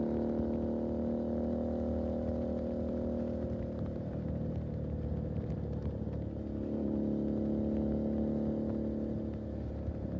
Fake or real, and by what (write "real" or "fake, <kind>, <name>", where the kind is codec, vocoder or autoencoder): real